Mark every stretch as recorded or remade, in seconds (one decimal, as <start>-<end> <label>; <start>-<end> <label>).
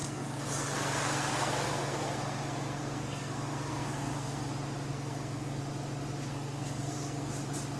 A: 0.0-4.5 remade; 4.5-4.9 recorded; 4.9-5.6 remade; 5.6-6.3 recorded; 6.3-7.3 remade; 7.3-7.8 recorded